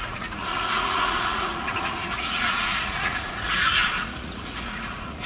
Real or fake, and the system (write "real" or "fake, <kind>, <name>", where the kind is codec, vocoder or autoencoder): fake, vocoder, Vocos